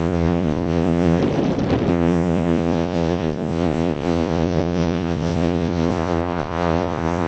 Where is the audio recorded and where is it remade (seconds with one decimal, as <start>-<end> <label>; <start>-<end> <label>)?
0.0-1.2 remade; 1.2-1.9 recorded; 1.9-7.3 remade